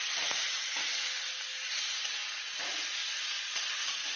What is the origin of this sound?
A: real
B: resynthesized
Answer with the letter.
A